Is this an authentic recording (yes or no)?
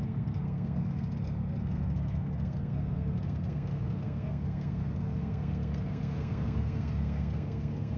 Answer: no